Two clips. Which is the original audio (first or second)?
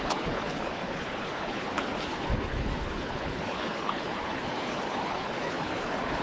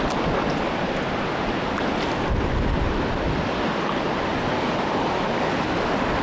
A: second